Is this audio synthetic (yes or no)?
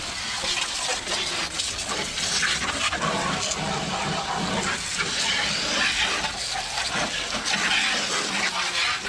no